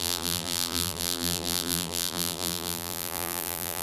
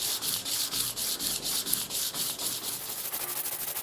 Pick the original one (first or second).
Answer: second